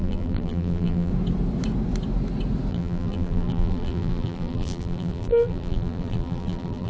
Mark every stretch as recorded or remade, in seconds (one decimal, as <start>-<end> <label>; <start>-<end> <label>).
0.0-1.1 remade; 1.1-2.7 recorded; 2.7-6.9 remade